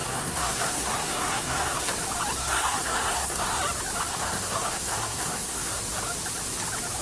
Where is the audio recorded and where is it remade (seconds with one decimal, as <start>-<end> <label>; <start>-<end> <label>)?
0.0-1.9 remade; 1.9-2.4 recorded; 2.4-3.6 remade; 3.6-4.1 recorded; 4.1-5.8 remade; 5.8-7.0 recorded